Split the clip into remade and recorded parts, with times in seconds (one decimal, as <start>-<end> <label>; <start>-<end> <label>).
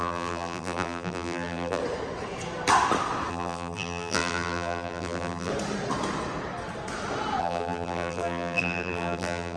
0.0-1.8 remade; 1.8-3.3 recorded; 3.3-5.5 remade; 5.5-7.4 recorded; 7.4-9.6 remade